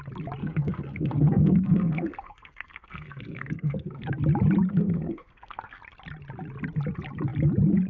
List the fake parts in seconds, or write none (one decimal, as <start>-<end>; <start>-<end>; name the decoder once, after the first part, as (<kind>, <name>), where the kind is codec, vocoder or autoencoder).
0.4-4.1 (codec, SNAC); 4.7-5.8